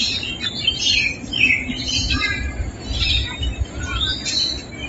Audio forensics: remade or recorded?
recorded